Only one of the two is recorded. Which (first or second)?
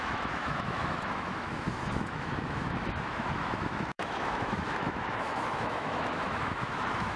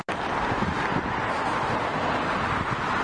second